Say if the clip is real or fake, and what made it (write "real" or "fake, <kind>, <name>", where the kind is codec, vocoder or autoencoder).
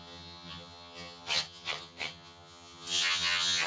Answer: fake, vocoder, HiFi-GAN